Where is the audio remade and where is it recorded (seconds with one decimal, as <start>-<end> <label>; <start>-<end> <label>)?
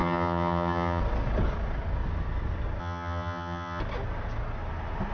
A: 0.0-1.0 remade; 1.0-2.8 recorded; 2.8-3.8 remade; 3.8-5.1 recorded